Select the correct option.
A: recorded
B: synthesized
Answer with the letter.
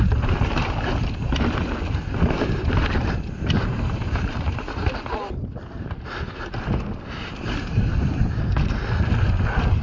A